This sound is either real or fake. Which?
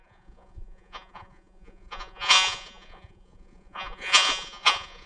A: fake